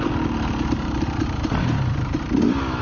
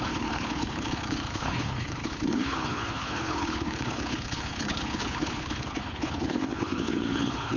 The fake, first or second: second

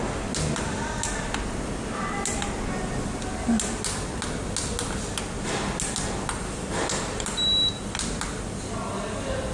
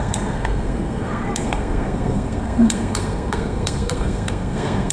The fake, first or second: second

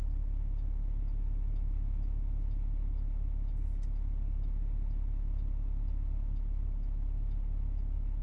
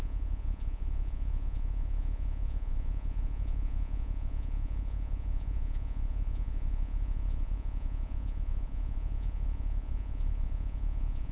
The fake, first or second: second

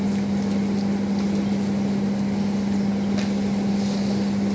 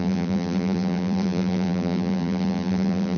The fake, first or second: second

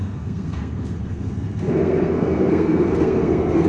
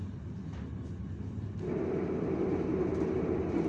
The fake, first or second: first